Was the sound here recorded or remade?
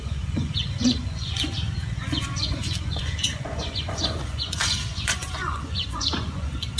remade